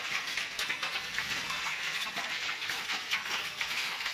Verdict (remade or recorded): remade